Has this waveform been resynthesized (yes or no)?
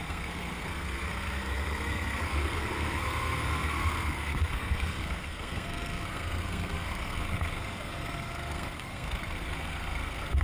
yes